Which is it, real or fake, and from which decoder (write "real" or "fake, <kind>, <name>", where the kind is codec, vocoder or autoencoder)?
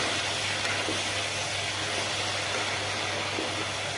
real